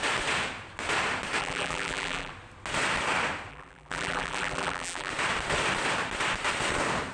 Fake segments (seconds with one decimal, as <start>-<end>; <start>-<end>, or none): 1.4-2.3; 3.5-5.1